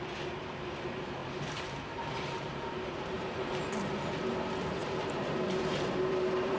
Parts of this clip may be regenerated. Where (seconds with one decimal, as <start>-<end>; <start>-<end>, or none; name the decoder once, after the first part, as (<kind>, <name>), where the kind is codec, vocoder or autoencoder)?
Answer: 1.2-4.1 (vocoder, BigVGAN v2); 4.8-6.6